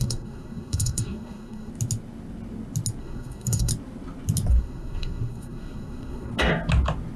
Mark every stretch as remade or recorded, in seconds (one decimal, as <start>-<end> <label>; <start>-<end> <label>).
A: 0.0-1.7 remade; 1.7-3.0 recorded; 3.0-3.7 remade; 3.7-4.5 recorded; 4.5-6.3 remade; 6.3-7.2 recorded